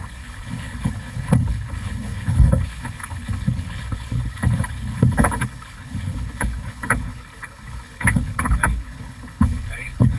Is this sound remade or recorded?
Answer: remade